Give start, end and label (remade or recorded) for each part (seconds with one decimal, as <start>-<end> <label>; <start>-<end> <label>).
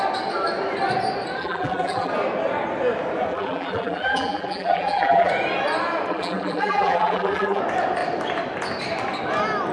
0.0-1.4 recorded; 1.4-2.1 remade; 2.1-3.3 recorded; 3.3-5.3 remade; 5.3-6.1 recorded; 6.1-7.6 remade; 7.6-9.7 recorded